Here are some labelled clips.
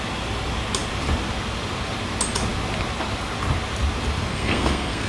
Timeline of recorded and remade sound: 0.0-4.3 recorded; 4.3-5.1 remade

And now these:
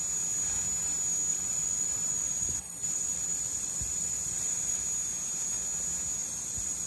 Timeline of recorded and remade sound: 0.0-1.3 recorded; 1.3-4.8 remade; 4.8-6.2 recorded; 6.2-6.9 remade

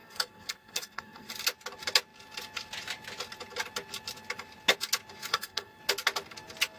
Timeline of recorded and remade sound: 0.0-1.3 remade; 1.3-5.3 recorded; 5.3-5.8 remade; 5.8-6.8 recorded

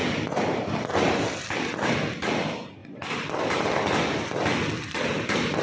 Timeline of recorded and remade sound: 0.0-5.6 recorded